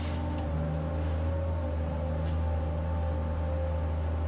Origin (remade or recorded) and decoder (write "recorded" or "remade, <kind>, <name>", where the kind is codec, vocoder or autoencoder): recorded